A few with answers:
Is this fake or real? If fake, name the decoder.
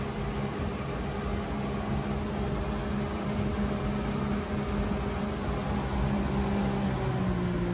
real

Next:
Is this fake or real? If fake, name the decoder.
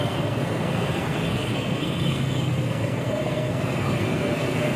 fake, codec, SNAC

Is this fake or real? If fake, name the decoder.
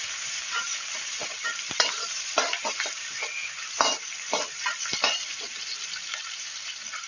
fake, vocoder, BigVGAN v2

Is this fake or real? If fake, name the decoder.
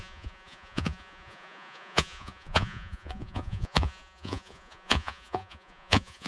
fake, vocoder, Vocos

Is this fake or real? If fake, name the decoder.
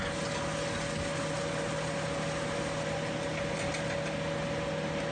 real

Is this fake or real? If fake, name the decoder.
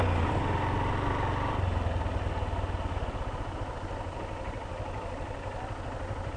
real